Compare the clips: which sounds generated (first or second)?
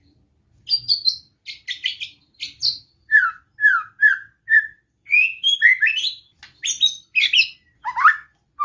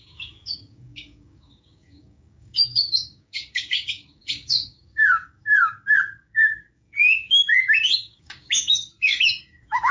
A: second